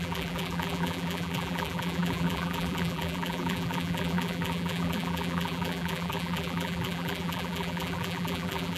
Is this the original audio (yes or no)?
no